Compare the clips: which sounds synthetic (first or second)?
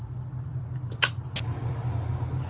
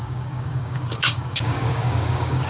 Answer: second